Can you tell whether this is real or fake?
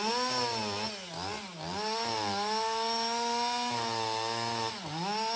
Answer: real